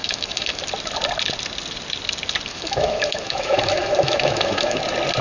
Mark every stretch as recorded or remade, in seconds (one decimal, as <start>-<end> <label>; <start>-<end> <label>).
0.0-0.6 remade; 0.6-2.5 recorded; 2.5-4.8 remade; 4.8-5.2 recorded